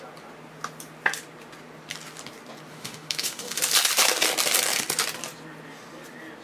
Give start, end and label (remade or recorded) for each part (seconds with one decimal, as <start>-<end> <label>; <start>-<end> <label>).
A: 0.0-2.7 recorded; 2.7-3.6 remade; 3.6-6.4 recorded